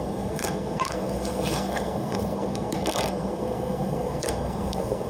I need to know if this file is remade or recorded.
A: remade